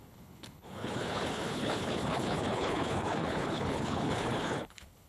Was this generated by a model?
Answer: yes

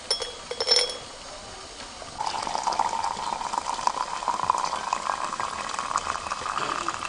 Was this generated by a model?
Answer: no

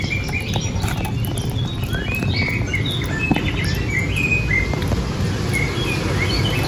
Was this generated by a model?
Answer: no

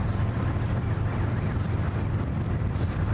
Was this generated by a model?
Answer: yes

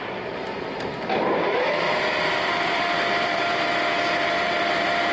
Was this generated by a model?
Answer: yes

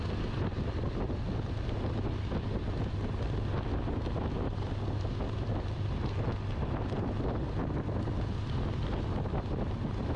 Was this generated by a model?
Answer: no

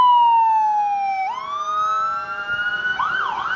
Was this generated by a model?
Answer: no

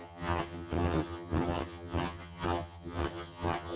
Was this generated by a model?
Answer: yes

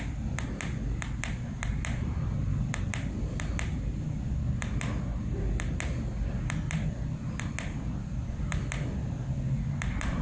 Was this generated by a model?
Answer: no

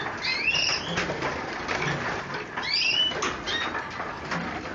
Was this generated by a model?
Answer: no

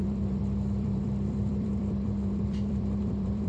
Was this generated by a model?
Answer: yes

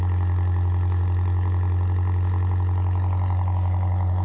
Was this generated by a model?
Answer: no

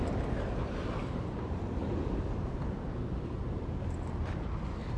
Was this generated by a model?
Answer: no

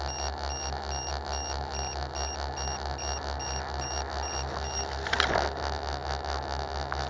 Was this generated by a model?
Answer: no